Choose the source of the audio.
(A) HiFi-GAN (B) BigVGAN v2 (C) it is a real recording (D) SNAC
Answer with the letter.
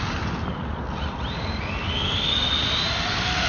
C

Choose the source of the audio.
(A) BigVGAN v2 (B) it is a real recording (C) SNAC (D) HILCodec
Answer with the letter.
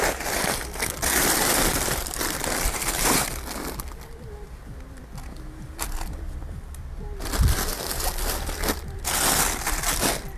A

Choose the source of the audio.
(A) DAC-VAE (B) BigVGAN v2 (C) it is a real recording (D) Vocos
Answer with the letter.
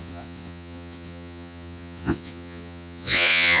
D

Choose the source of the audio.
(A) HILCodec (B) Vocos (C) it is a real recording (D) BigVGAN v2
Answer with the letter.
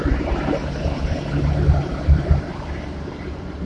D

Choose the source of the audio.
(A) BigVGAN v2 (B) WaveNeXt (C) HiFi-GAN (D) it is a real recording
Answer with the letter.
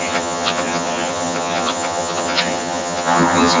C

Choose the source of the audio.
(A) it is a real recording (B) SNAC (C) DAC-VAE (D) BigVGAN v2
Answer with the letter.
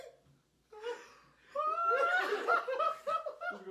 A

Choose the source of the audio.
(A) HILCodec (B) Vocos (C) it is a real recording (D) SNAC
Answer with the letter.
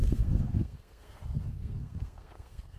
D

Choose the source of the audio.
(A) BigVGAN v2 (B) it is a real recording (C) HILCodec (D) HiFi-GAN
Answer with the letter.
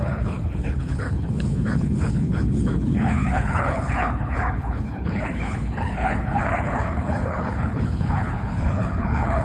C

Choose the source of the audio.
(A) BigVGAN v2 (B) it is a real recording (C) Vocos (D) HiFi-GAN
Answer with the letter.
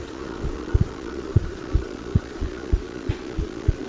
C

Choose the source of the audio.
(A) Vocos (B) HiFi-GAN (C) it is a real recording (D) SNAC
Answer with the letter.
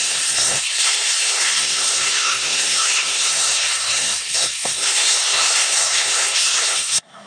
D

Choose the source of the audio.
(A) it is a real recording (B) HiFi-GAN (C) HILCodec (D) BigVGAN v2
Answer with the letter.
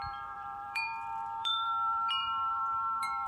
D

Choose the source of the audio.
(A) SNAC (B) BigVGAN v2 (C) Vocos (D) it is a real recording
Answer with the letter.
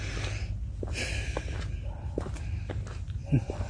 D